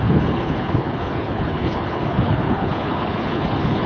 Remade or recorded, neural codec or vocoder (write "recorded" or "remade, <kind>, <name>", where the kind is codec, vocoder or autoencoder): remade, codec, HILCodec